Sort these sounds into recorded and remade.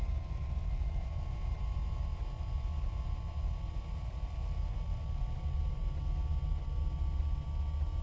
recorded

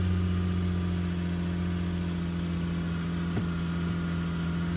recorded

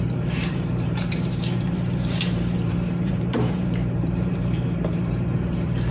remade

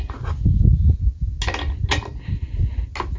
recorded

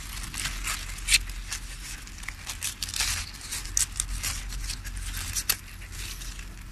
recorded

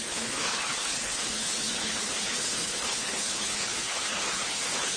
remade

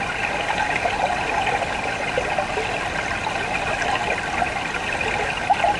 recorded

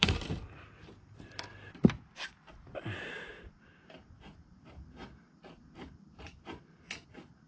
remade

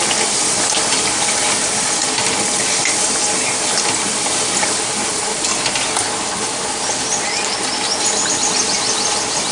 recorded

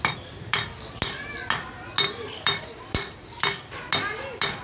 recorded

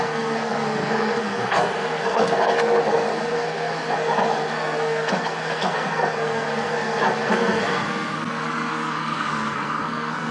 remade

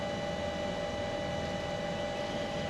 recorded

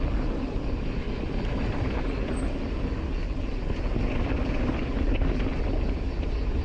recorded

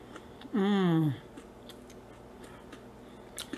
recorded